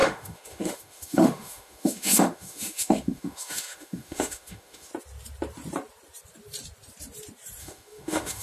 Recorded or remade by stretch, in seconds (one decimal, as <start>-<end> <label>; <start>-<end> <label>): 0.0-4.9 remade; 4.9-7.6 recorded; 7.6-8.4 remade